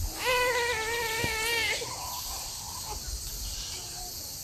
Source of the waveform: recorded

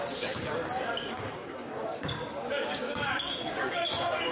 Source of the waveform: remade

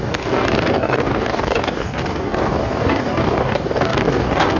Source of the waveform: remade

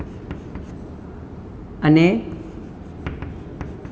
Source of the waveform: recorded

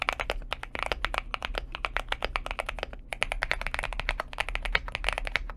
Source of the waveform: recorded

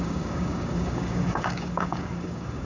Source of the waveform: remade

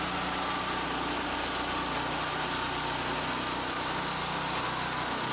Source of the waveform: recorded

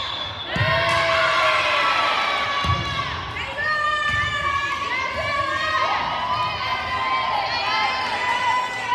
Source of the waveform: recorded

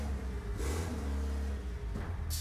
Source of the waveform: recorded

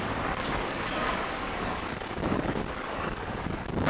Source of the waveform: remade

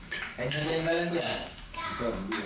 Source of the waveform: remade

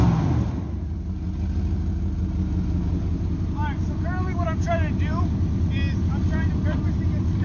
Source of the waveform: recorded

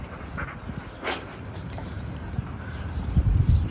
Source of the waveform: recorded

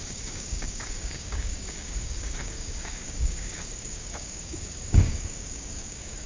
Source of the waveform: remade